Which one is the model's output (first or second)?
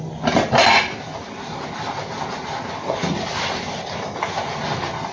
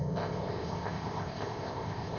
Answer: second